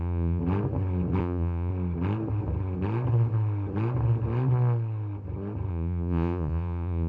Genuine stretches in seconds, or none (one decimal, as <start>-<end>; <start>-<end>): 0.4-1.2; 1.7-5.7